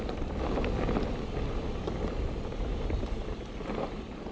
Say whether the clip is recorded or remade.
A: recorded